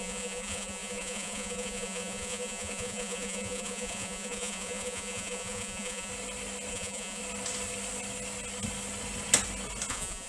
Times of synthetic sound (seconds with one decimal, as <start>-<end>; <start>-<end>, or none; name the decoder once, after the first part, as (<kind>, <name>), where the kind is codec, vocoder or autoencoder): 0.0-6.1 (vocoder, Vocos); 6.7-7.2; 9.9-10.3